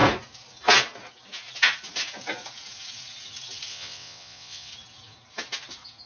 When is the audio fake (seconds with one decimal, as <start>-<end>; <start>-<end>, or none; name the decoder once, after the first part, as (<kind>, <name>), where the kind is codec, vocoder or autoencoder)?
3.7-4.7 (vocoder, WaveNeXt)